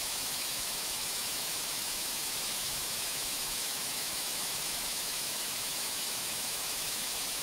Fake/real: fake